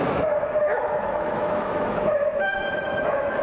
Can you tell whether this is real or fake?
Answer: fake